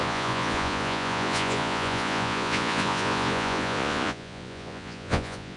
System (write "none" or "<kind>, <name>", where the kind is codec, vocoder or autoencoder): vocoder, Vocos